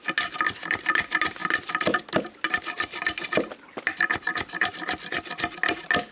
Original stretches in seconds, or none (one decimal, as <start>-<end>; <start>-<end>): 0.0-6.1